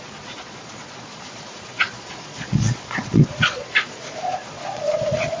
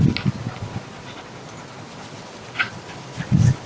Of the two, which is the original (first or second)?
second